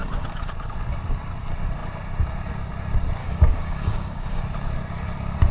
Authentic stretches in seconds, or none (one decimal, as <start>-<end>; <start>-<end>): 0.5-3.2; 4.4-5.5